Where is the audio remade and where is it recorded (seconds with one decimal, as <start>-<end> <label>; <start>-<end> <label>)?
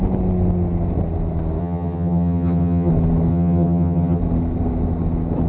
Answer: 0.0-1.6 recorded; 1.6-2.9 remade; 2.9-3.3 recorded; 3.3-4.2 remade; 4.2-5.5 recorded